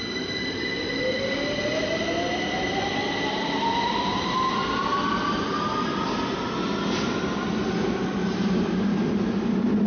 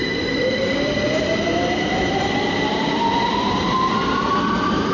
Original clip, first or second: first